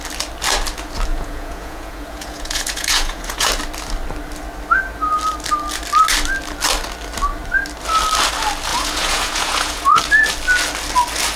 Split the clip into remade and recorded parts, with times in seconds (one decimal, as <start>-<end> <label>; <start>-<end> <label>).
0.0-1.1 recorded; 1.1-3.5 remade; 3.5-8.7 recorded; 8.7-10.0 remade; 10.0-11.4 recorded